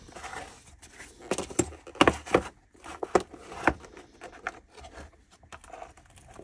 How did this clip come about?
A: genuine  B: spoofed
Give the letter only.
A